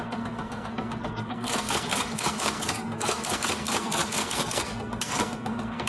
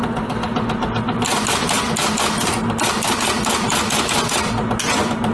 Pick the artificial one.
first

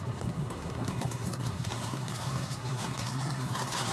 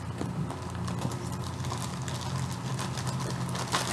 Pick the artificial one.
first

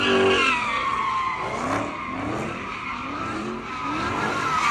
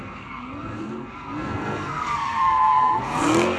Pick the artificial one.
second